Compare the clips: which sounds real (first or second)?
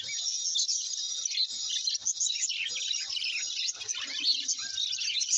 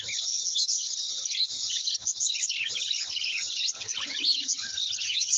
first